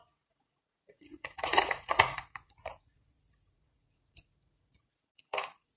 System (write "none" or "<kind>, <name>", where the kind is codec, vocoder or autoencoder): vocoder, Vocos